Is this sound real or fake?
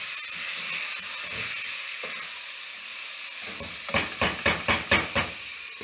real